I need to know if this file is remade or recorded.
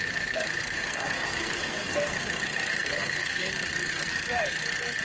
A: remade